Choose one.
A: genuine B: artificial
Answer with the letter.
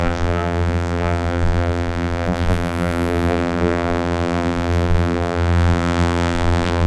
B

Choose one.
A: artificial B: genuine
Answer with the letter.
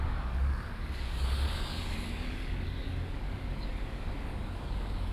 A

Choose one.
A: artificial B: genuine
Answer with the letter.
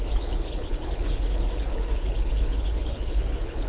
A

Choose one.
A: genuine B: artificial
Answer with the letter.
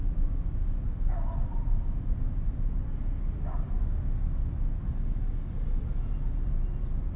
A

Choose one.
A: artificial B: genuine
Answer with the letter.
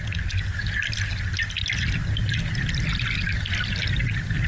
B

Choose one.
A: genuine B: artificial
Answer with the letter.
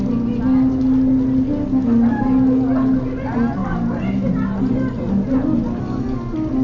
A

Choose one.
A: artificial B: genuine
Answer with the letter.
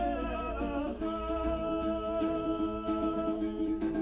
A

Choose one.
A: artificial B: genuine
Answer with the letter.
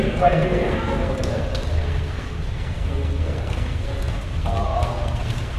A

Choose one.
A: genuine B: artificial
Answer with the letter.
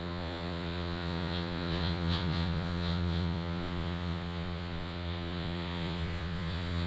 B